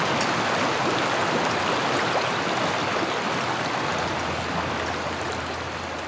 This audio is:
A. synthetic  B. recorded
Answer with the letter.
B